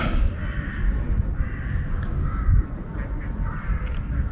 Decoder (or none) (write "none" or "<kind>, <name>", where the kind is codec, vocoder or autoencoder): none